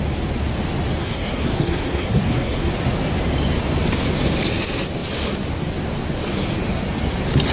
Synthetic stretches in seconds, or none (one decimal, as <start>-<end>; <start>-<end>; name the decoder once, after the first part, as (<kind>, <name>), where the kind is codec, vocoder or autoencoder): 1.0-2.7 (codec, SNAC)